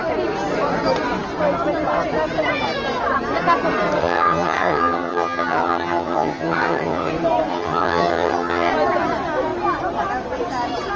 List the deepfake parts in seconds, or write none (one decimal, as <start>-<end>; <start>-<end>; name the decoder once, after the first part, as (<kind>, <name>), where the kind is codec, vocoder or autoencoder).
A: 4.0-7.1 (vocoder, HiFi-GAN); 7.5-8.7

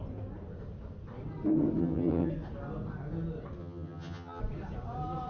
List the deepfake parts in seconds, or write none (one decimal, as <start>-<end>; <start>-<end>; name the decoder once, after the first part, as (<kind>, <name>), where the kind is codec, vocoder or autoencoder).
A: 1.8-2.3 (vocoder, HiFi-GAN); 3.6-4.4